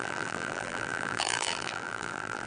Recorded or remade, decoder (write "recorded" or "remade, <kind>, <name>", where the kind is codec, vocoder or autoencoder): remade, vocoder, BigVGAN v2